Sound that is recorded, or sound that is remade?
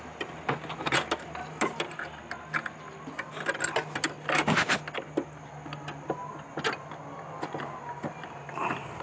recorded